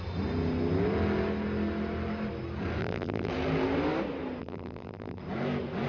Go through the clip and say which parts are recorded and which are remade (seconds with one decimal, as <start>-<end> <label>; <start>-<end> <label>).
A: 0.0-2.8 recorded; 2.8-3.3 remade; 3.3-4.4 recorded; 4.4-5.2 remade; 5.2-5.9 recorded